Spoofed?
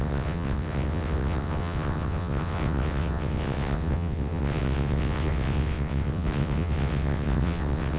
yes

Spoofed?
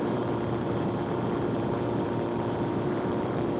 yes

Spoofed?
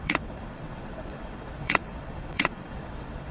yes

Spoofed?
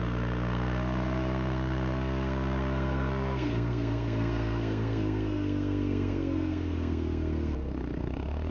yes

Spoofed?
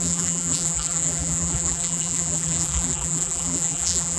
yes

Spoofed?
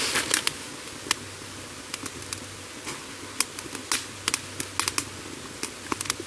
no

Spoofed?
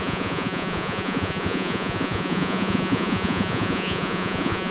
yes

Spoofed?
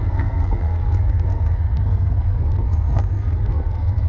yes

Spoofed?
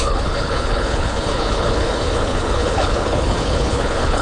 yes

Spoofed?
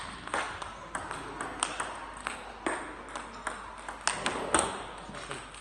no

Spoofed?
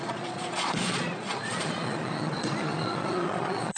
yes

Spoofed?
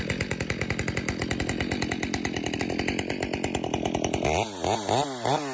no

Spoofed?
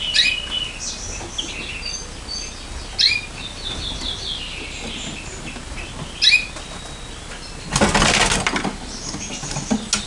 no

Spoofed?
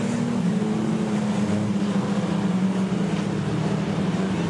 no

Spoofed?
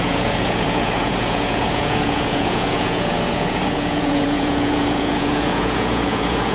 yes